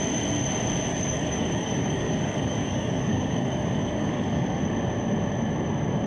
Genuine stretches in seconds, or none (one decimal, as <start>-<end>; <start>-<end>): 0.0-0.9; 4.6-6.1

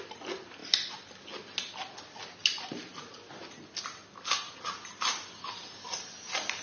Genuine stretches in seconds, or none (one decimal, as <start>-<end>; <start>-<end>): 0.0-6.6

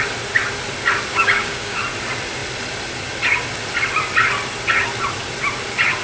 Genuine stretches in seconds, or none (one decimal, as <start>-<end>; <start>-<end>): 0.0-1.1; 1.8-6.0

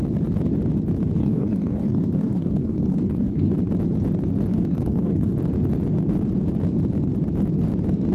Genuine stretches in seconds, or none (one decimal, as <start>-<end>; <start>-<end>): 0.0-1.2; 3.5-4.5; 5.3-8.1

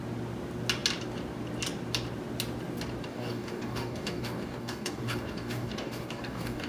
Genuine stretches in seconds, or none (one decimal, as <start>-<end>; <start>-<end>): 0.0-3.1